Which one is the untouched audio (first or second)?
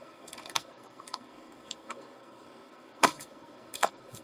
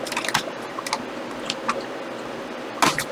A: second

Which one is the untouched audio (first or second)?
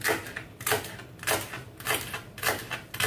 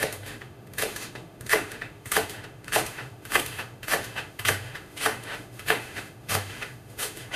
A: first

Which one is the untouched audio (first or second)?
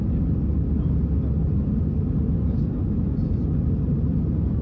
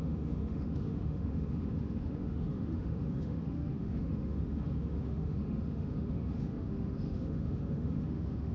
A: first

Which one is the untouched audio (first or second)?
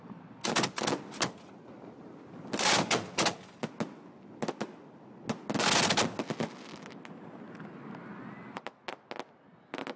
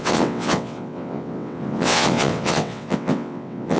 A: first